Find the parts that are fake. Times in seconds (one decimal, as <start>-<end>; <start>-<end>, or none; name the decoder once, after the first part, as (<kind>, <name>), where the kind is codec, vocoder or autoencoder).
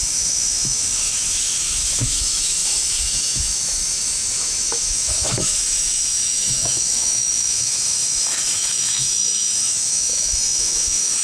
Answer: 0.0-11.2 (autoencoder, DAC-VAE)